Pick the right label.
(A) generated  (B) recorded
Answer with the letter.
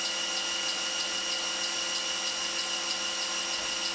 B